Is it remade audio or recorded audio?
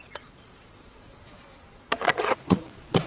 remade